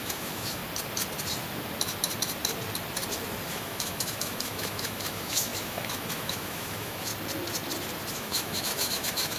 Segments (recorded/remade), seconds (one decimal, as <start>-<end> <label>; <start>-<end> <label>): 0.0-0.6 remade; 0.6-3.5 recorded; 3.5-7.1 remade; 7.1-8.1 recorded; 8.1-9.4 remade

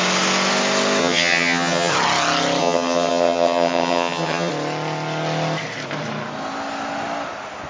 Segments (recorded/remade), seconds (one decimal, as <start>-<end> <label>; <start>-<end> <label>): 0.0-1.0 recorded; 1.0-1.9 remade; 1.9-2.6 recorded; 2.6-4.5 remade; 4.5-7.7 recorded

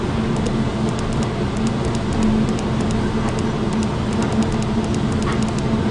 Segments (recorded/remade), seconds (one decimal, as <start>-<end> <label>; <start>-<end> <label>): 0.0-5.9 recorded